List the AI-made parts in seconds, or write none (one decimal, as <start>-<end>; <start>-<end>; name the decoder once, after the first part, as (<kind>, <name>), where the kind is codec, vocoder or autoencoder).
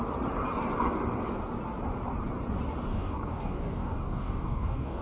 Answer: 2.9-5.0 (codec, DAC)